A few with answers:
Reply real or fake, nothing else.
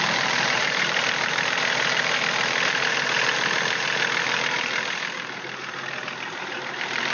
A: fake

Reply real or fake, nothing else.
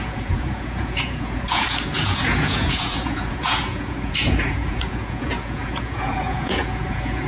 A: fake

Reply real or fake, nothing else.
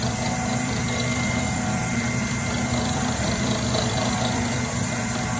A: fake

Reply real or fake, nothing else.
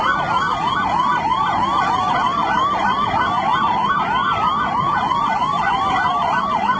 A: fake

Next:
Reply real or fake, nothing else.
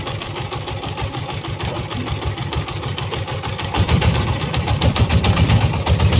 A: fake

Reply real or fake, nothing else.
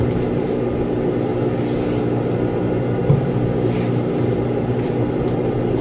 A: real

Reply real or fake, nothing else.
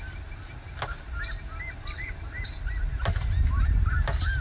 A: real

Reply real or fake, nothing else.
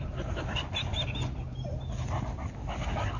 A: real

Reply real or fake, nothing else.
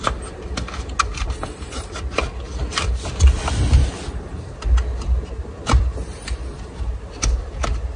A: real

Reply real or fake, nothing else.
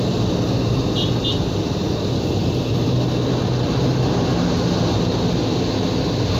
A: real